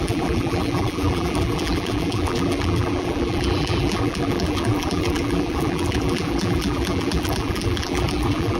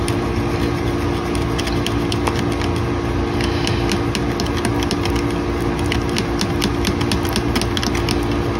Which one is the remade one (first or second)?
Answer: first